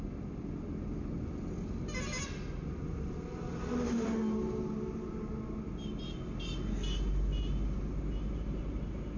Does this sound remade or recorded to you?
recorded